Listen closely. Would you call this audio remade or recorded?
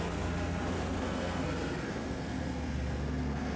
remade